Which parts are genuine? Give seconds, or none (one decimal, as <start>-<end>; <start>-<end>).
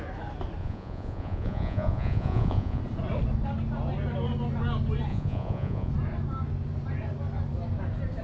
0.0-0.6; 2.8-5.1; 5.9-8.2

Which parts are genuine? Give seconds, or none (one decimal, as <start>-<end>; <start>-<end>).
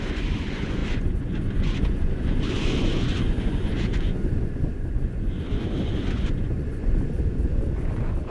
none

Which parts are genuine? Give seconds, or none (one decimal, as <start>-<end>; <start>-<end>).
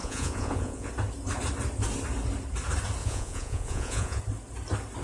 0.9-3.0; 4.2-5.0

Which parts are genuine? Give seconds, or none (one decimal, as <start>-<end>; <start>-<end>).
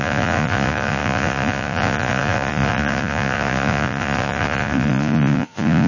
none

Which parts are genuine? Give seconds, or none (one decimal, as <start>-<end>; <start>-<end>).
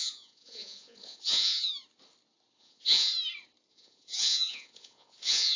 1.7-2.6; 3.1-3.7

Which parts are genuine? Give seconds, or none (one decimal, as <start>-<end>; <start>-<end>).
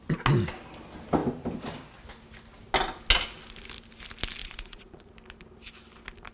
0.0-4.4; 5.1-6.3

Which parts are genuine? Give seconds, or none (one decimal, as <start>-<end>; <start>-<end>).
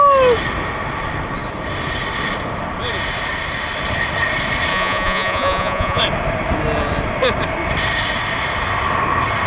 0.0-4.7; 6.0-9.5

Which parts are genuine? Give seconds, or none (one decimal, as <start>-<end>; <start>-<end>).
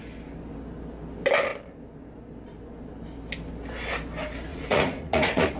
0.0-4.5